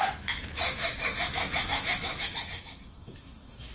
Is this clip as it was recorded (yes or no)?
no